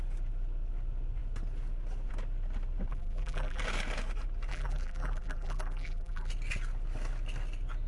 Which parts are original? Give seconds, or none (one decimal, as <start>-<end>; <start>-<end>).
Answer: 0.0-2.9; 3.6-4.5; 6.3-7.9